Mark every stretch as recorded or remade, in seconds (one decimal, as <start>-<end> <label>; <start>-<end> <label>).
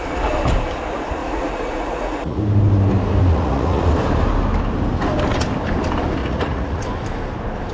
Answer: 0.0-1.2 recorded; 1.2-2.4 remade; 2.4-3.3 recorded; 3.3-3.9 remade; 3.9-6.2 recorded; 6.2-6.8 remade; 6.8-7.7 recorded